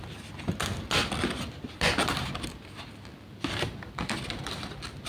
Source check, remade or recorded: recorded